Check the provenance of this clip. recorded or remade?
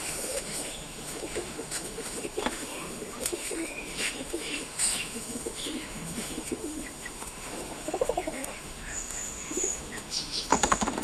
remade